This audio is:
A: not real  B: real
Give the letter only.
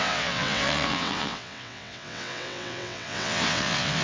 A